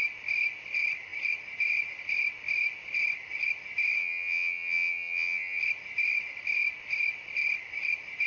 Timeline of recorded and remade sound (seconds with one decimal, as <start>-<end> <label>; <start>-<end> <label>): 0.0-4.0 recorded; 4.0-5.6 remade; 5.6-8.3 recorded